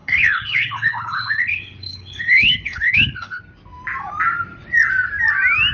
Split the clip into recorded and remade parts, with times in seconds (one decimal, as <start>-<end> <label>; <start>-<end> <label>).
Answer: 0.0-3.4 remade; 3.4-5.7 recorded